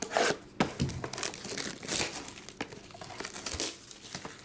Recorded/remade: recorded